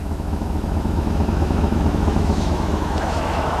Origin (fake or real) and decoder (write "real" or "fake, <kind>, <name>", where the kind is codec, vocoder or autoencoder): fake, autoencoder, DAC-VAE